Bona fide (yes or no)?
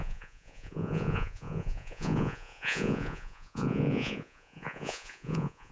no